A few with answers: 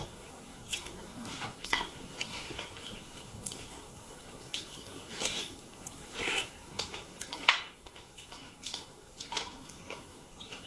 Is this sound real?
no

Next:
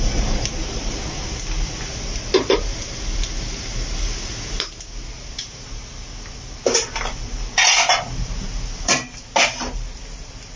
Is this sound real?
yes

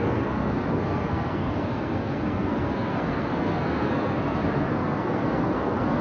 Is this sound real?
no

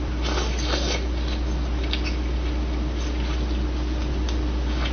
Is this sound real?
yes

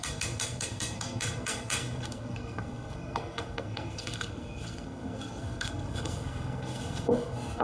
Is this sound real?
no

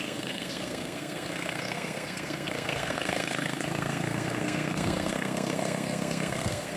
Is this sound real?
no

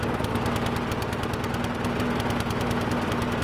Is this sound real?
yes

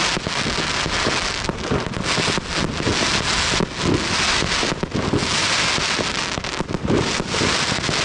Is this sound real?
yes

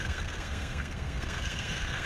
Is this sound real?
no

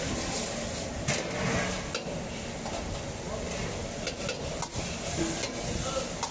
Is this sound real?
yes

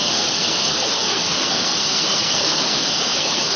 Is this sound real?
no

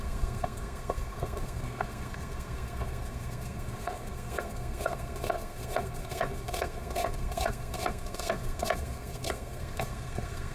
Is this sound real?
no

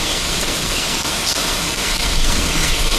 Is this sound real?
no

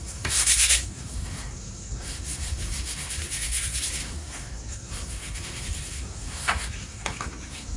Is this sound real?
no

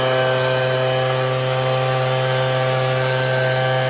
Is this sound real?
yes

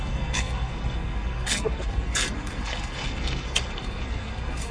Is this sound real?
no